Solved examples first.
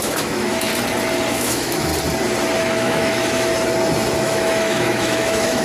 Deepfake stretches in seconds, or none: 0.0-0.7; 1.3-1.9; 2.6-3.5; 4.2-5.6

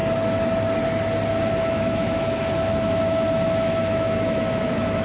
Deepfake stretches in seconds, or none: 1.6-5.0

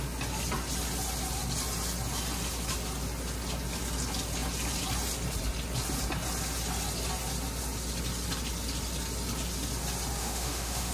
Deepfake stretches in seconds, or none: 10.2-10.9